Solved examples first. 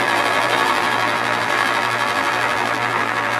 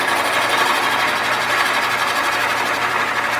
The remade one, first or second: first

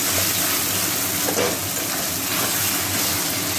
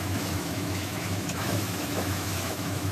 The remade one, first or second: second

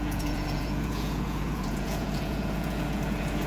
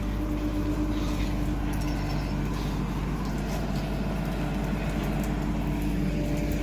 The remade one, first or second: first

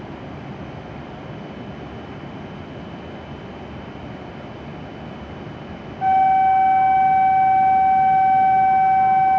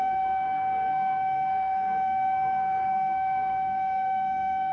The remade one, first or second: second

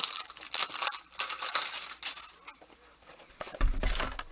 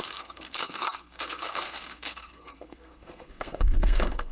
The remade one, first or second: second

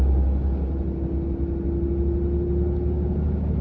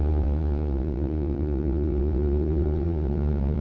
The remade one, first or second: second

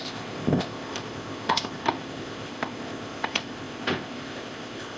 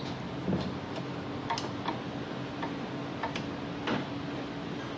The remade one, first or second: first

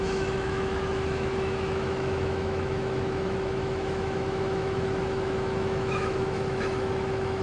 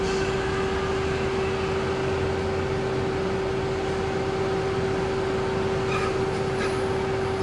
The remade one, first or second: first